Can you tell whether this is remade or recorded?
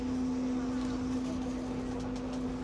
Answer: recorded